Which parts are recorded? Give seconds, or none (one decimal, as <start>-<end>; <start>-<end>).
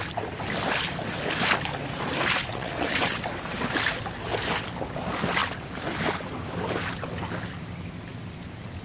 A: 0.0-2.5; 3.2-8.8